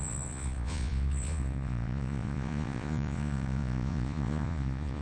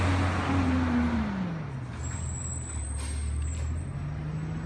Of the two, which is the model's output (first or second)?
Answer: first